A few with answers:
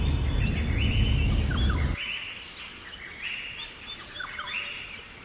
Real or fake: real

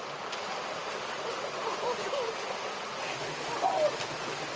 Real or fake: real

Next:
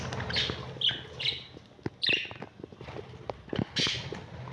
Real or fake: real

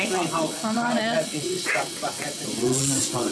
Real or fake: fake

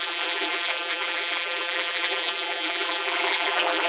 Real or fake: fake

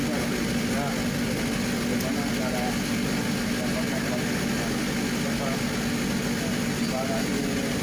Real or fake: real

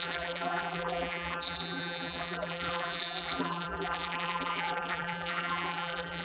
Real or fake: fake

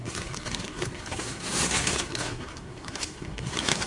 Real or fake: fake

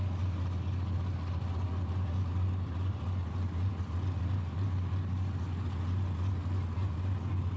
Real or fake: real